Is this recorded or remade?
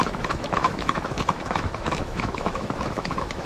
remade